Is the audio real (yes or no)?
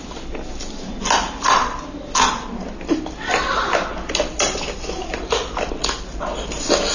yes